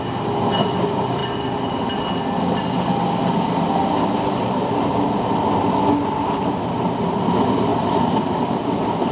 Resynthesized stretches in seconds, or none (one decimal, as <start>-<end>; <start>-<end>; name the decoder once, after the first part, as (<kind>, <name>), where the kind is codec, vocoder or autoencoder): none